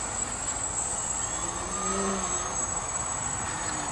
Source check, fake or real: fake